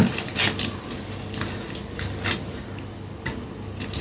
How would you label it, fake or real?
real